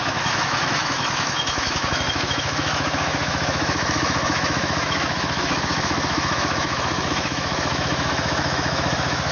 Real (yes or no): no